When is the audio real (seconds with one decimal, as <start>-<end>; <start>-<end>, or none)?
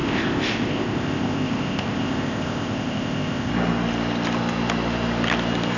3.5-5.8